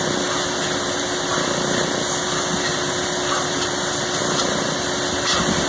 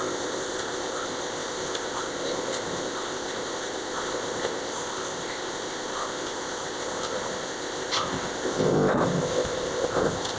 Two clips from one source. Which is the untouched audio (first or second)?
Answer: first